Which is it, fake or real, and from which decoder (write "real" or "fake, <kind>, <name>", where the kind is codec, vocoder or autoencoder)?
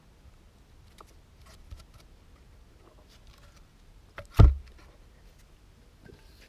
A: real